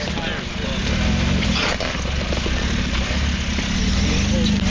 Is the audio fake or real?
real